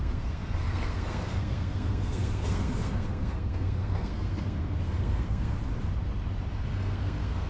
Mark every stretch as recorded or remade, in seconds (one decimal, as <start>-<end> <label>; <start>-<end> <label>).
0.0-5.6 remade; 5.6-6.7 recorded; 6.7-7.5 remade